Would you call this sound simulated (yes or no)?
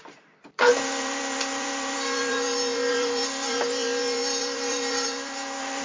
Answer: yes